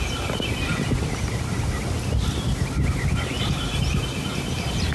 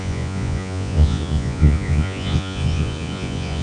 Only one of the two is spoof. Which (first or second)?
second